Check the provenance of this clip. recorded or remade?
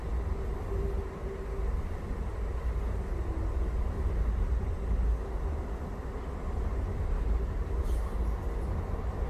recorded